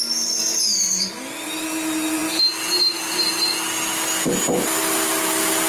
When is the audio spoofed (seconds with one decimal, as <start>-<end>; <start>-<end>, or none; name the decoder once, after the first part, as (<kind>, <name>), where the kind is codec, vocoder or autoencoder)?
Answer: 0.5-1.1 (vocoder, BigVGAN v2)